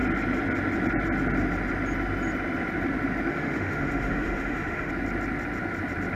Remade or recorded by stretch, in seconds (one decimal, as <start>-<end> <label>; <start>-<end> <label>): 0.0-3.3 recorded; 3.3-4.9 remade; 4.9-6.2 recorded